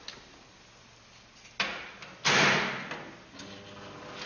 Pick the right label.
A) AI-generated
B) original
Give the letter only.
B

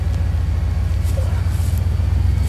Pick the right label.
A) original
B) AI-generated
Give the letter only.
A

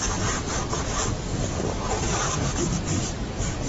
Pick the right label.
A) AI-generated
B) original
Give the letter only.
B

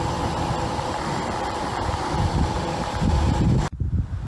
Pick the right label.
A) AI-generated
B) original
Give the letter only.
A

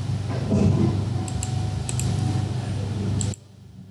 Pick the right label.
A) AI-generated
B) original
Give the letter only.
B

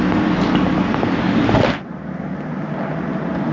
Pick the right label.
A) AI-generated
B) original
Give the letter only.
B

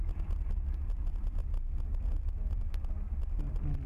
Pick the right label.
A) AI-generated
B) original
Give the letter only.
B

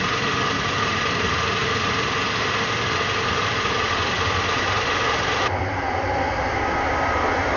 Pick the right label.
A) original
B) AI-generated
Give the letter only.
B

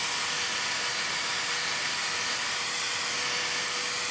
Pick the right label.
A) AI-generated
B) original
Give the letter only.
B